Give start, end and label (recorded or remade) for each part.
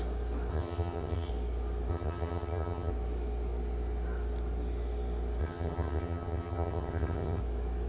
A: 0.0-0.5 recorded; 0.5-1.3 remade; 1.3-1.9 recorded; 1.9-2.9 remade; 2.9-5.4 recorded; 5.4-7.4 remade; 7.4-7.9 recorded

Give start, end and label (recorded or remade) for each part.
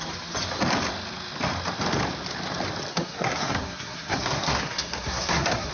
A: 0.0-2.9 recorded; 2.9-5.7 remade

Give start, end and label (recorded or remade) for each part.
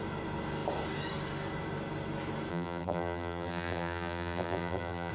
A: 0.0-2.5 recorded; 2.5-5.1 remade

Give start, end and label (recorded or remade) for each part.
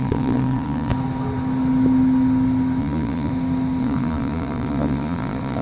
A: 0.0-0.9 remade; 0.9-2.8 recorded; 2.8-3.3 remade; 3.3-3.8 recorded; 3.8-5.6 remade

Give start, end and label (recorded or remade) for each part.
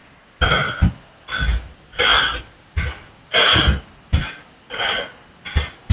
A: 0.0-5.9 recorded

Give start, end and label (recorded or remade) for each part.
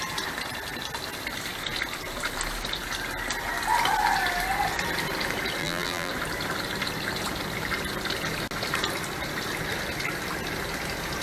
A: 0.0-5.6 recorded; 5.6-6.1 remade; 6.1-11.2 recorded